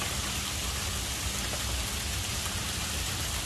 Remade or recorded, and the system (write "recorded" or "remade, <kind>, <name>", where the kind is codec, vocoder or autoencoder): recorded